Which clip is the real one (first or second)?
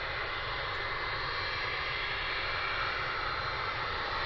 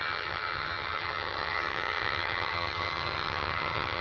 first